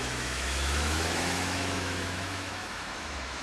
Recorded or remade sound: remade